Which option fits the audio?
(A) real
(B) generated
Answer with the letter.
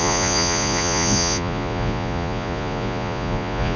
B